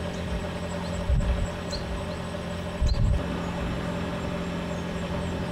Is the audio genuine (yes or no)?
yes